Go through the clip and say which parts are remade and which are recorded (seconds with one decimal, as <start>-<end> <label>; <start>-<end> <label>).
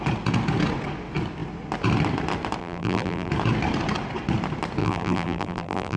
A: 0.0-2.6 recorded; 2.6-3.3 remade; 3.3-4.8 recorded; 4.8-6.0 remade